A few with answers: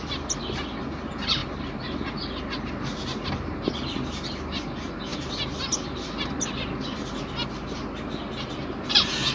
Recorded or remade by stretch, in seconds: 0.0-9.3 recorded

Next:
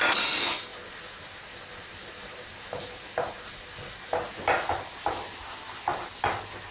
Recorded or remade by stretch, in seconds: 0.0-6.7 recorded

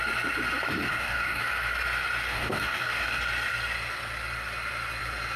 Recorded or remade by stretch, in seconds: 0.0-0.9 recorded; 0.9-1.4 remade; 1.4-2.3 recorded; 2.3-3.2 remade; 3.2-5.4 recorded

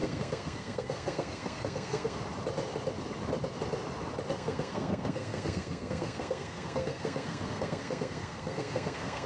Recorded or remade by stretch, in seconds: 0.0-2.2 remade; 2.2-4.3 recorded; 4.3-9.3 remade

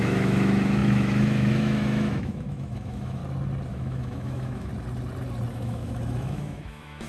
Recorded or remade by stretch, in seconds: 0.0-3.2 remade; 3.2-3.7 recorded; 3.7-4.7 remade; 4.7-5.5 recorded; 5.5-7.1 remade